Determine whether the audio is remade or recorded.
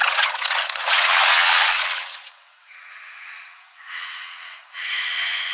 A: remade